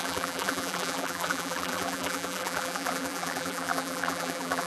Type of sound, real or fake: fake